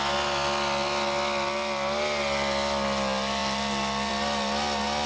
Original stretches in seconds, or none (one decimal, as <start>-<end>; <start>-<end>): 0.0-5.1